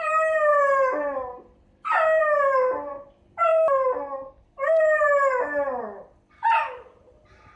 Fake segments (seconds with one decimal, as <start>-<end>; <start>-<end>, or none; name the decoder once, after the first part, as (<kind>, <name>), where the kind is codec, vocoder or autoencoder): none